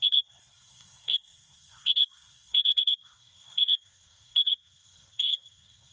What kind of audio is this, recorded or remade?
remade